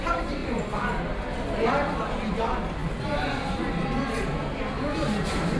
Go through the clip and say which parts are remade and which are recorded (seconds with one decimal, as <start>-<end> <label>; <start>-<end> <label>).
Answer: 0.0-5.6 recorded